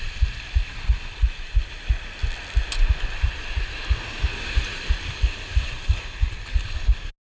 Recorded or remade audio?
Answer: recorded